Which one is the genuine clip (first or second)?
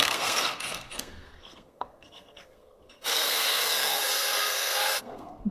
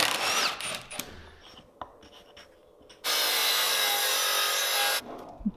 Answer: second